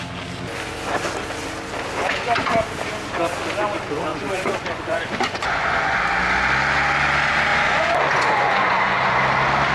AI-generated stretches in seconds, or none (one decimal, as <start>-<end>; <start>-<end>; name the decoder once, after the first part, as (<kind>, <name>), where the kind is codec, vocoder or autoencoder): 4.1-6.0 (vocoder, Vocos); 7.5-9.2